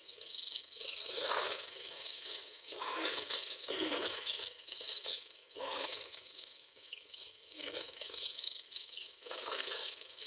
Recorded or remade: remade